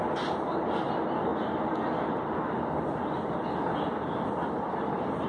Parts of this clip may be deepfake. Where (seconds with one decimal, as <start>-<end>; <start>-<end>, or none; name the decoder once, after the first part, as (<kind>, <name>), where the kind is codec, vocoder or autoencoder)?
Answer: none